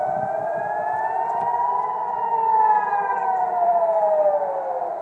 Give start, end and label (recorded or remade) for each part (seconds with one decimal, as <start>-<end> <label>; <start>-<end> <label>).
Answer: 0.0-1.5 recorded; 1.5-4.5 remade; 4.5-5.0 recorded